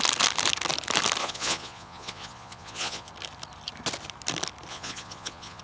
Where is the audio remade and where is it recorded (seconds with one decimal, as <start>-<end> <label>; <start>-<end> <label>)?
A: 0.0-1.2 recorded; 1.2-3.1 remade; 3.1-4.7 recorded; 4.7-5.6 remade